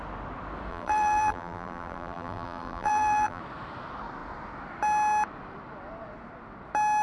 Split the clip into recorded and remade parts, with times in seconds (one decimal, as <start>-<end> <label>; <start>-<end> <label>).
0.0-0.7 recorded; 0.7-3.4 remade; 3.4-7.0 recorded